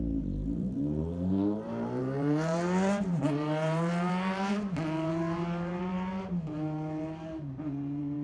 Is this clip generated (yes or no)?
yes